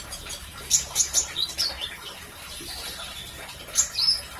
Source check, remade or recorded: recorded